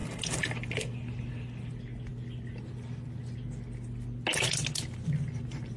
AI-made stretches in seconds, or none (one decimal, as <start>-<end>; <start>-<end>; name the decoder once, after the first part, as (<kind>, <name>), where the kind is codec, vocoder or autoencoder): none